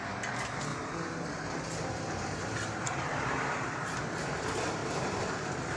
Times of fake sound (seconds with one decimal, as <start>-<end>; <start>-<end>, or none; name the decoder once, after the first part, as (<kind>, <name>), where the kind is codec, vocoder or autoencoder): 0.7-3.7 (vocoder, BigVGAN v2); 4.8-5.3